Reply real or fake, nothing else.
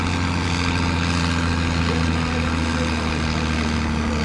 real